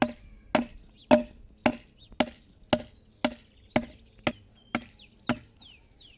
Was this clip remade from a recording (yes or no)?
no